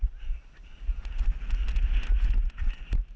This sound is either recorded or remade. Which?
recorded